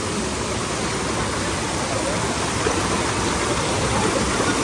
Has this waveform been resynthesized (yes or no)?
no